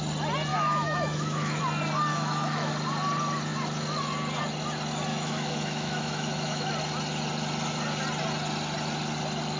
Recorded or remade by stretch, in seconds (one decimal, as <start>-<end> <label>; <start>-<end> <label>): 0.0-0.5 recorded; 0.5-1.6 remade; 1.6-2.1 recorded; 2.1-2.7 remade; 2.7-5.1 recorded; 5.1-6.7 remade; 6.7-9.6 recorded